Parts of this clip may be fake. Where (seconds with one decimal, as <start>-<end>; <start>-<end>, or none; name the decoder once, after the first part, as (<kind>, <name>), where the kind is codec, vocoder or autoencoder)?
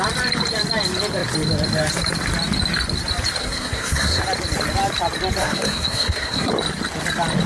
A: 3.4-4.2 (codec, SNAC); 5.4-6.5